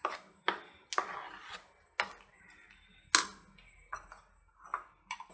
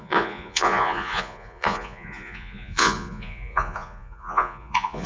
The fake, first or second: second